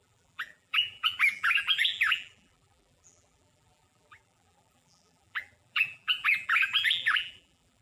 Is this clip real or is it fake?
fake